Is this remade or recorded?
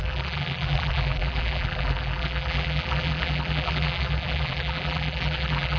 remade